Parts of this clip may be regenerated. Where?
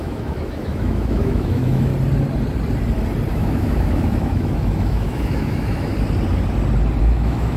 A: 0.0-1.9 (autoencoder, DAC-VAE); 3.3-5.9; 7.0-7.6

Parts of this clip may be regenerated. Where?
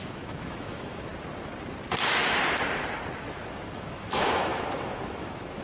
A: 0.0-1.1 (autoencoder, DAC-VAE); 3.2-5.6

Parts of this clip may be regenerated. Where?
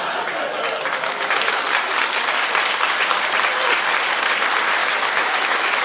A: 4.8-5.8 (autoencoder, DAC-VAE)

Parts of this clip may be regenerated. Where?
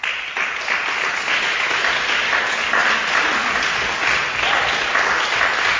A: 1.3-1.8 (autoencoder, DAC-VAE)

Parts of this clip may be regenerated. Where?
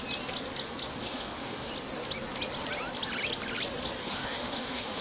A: 1.0-1.7 (autoencoder, DAC-VAE); 4.0-5.0